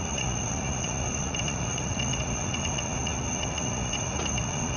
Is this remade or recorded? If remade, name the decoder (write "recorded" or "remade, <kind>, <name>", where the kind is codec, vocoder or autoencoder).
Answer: remade, vocoder, Vocos